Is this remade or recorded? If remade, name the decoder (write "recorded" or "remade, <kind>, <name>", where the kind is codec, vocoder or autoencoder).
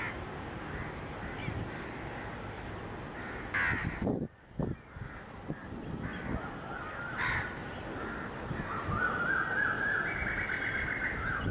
recorded